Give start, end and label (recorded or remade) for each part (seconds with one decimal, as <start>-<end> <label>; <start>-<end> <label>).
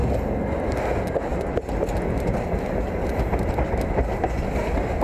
0.0-5.0 recorded